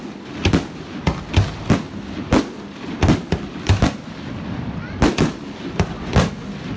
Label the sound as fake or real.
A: real